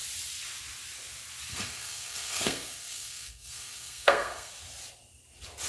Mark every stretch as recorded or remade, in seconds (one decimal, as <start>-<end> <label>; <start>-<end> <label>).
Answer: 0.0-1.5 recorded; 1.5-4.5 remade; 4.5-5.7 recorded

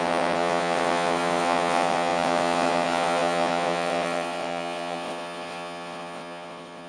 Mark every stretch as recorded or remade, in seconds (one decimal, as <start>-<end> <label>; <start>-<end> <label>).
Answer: 0.0-6.9 remade

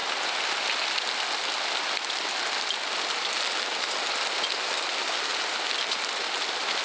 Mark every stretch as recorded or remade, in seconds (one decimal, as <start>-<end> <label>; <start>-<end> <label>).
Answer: 0.0-6.8 recorded

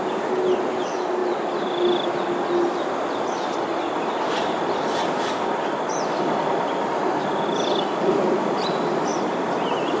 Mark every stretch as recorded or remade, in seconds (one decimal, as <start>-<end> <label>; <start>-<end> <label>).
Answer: 0.0-10.0 recorded

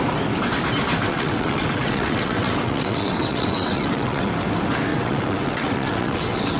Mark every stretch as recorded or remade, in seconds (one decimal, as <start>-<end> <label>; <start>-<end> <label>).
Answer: 0.0-1.1 recorded; 1.1-4.3 remade; 4.3-4.9 recorded; 4.9-6.6 remade

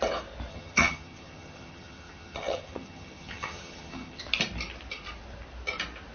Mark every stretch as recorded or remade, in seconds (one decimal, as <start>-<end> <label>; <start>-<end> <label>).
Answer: 0.0-0.5 recorded; 0.5-4.2 remade; 4.2-6.1 recorded

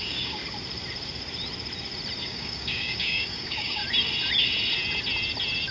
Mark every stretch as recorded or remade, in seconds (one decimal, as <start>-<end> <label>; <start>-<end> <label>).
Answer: 0.0-0.4 remade; 0.4-2.2 recorded; 2.2-3.8 remade; 3.8-5.7 recorded